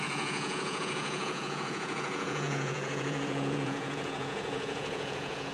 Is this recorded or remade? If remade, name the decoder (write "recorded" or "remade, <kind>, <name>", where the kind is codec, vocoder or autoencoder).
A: remade, vocoder, Vocos